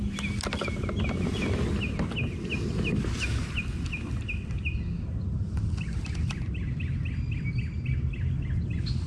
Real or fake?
real